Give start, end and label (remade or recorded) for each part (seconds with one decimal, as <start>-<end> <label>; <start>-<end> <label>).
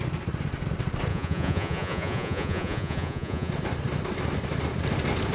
0.0-1.1 recorded; 1.1-3.5 remade; 3.5-5.3 recorded